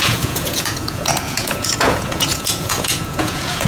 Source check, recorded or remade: remade